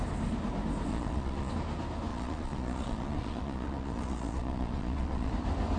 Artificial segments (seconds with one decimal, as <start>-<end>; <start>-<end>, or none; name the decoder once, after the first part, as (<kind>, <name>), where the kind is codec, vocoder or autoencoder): 0.9-1.5 (vocoder, Vocos); 2.1-5.3